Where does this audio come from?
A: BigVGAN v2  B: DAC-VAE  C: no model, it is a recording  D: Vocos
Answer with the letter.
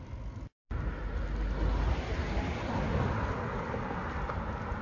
C